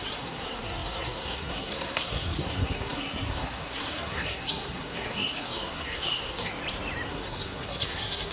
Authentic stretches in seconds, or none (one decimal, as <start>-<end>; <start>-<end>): 6.5-7.1